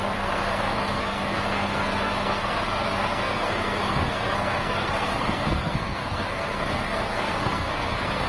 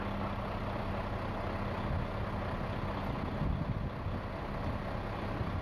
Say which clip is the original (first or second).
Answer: second